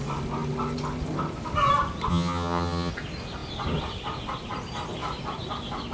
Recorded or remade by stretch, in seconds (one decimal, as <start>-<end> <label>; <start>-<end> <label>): 0.0-2.1 recorded; 2.1-2.9 remade; 2.9-5.9 recorded